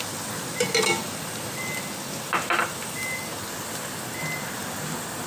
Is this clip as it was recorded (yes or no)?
yes